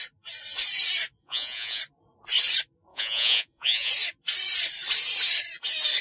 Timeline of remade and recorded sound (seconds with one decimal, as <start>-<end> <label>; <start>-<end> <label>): 0.0-1.2 recorded; 1.2-1.8 remade; 1.8-2.9 recorded; 2.9-3.9 remade; 3.9-6.0 recorded